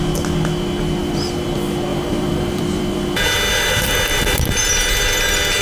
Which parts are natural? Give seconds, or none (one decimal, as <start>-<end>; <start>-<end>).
0.0-1.0; 1.5-1.9; 4.4-5.6